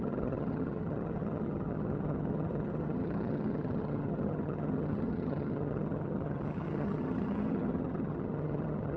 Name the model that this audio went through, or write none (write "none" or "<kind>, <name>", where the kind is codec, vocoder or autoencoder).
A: vocoder, HiFi-GAN